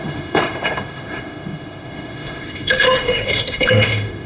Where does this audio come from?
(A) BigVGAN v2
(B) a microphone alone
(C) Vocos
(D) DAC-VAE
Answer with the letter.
D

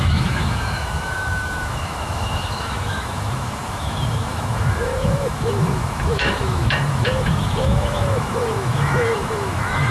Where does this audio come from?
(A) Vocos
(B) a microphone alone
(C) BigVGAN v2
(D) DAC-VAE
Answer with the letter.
D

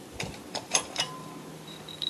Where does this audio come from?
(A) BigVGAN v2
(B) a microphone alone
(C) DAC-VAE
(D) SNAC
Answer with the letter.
A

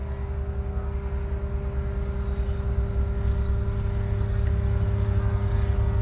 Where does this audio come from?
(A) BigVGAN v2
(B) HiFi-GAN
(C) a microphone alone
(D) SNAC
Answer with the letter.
C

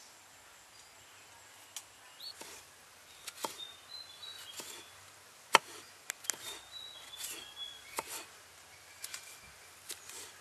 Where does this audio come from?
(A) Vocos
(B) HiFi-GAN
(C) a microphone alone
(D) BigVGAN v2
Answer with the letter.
C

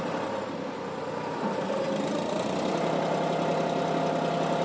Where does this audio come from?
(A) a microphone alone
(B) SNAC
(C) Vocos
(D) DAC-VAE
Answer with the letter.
A